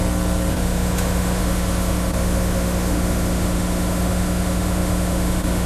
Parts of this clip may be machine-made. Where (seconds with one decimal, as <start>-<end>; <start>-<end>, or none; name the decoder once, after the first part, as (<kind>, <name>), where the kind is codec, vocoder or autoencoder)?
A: 0.5-5.7 (autoencoder, DAC-VAE)